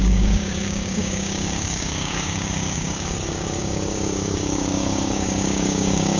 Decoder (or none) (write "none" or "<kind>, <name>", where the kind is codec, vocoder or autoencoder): codec, DAC